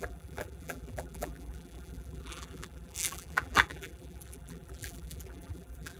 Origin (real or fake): fake